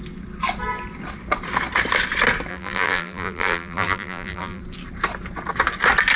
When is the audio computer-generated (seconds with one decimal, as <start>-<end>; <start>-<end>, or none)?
2.5-4.6